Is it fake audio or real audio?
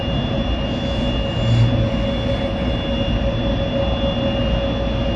real